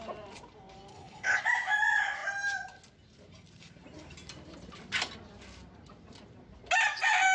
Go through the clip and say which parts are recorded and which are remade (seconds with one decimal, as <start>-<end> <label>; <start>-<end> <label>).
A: 0.0-0.9 recorded; 0.9-1.4 remade; 1.4-7.3 recorded